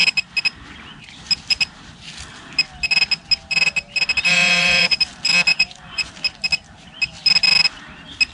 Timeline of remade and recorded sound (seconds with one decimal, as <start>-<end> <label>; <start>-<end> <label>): 0.0-4.3 recorded; 4.3-5.0 remade; 5.0-5.5 recorded; 5.5-6.1 remade; 6.1-8.3 recorded